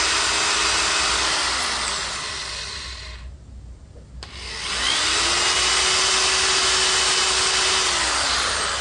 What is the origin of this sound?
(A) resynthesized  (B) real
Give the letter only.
B